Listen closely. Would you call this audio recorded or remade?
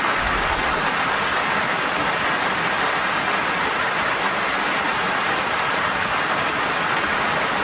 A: recorded